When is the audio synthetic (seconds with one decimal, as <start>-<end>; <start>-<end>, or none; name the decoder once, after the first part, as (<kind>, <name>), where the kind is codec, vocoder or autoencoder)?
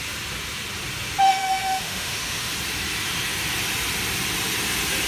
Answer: 1.2-2.5 (autoencoder, DAC-VAE)